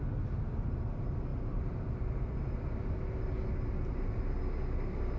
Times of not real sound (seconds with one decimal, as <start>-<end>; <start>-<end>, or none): none